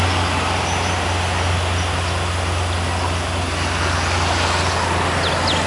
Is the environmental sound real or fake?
real